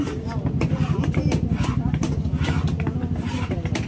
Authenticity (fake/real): real